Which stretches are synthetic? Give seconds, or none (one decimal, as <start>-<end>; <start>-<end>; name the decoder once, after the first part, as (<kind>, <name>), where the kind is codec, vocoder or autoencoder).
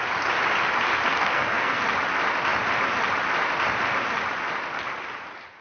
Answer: 1.1-1.8 (codec, SNAC)